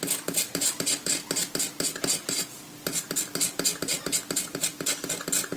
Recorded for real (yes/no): yes